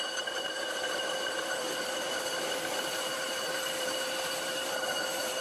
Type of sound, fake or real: fake